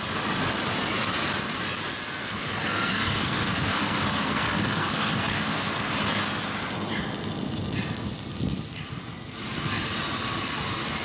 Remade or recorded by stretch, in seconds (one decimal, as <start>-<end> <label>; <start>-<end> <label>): 0.0-2.2 recorded; 2.2-5.9 remade; 5.9-11.0 recorded